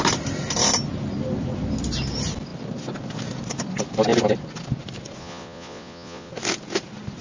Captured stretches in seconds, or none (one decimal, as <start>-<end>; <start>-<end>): 0.0-5.2; 6.3-7.2